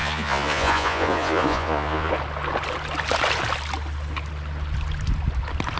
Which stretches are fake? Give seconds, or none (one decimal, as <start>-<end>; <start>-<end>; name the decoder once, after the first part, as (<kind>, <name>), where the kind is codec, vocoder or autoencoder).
0.0-2.1 (vocoder, Vocos)

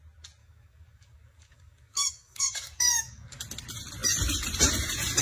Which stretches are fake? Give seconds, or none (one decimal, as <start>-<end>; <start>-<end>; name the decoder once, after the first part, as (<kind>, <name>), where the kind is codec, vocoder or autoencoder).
0.4-3.4 (codec, DAC)

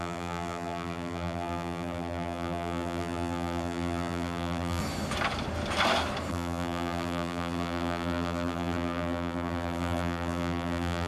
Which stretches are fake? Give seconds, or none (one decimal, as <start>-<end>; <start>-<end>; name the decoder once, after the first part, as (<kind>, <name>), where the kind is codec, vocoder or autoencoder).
0.0-4.8 (vocoder, BigVGAN v2); 6.3-11.1

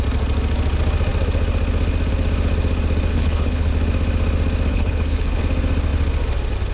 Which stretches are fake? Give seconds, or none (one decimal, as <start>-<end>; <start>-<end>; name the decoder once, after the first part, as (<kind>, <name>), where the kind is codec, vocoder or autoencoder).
3.1-3.7 (codec, HILCodec); 4.7-5.4

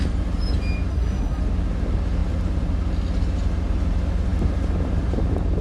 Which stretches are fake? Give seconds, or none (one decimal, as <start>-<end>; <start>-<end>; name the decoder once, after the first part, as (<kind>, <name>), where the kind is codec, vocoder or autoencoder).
0.9-1.4 (codec, SNAC)

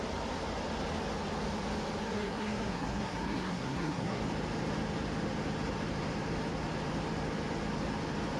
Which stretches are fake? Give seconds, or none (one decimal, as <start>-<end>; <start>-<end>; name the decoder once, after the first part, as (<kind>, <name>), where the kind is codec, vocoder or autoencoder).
2.0-4.2 (codec, SNAC)